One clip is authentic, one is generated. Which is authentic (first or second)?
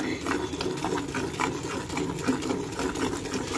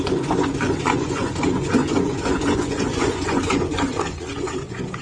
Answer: first